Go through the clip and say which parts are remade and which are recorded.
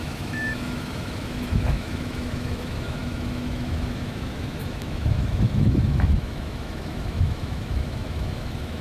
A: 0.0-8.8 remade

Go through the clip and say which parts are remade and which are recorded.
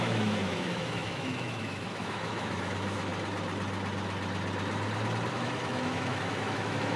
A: 0.0-3.1 remade; 3.1-5.3 recorded; 5.3-7.0 remade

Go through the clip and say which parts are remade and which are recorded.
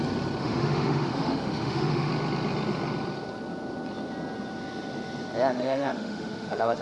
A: 0.0-0.4 recorded; 0.4-2.1 remade; 2.1-5.5 recorded; 5.5-6.8 remade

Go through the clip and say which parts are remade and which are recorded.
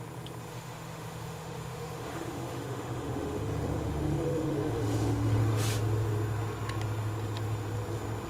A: 0.0-0.5 recorded; 0.5-5.4 remade; 5.4-8.3 recorded